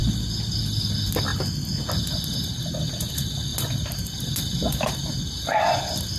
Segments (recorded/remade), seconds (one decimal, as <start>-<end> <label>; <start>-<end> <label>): 0.0-6.2 recorded